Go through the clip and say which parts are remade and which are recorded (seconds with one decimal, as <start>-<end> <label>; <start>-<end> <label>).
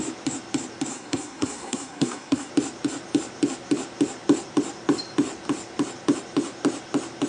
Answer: 0.0-0.9 recorded; 0.9-2.5 remade; 2.5-7.3 recorded